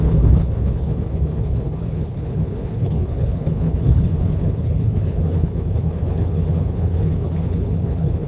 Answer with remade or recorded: remade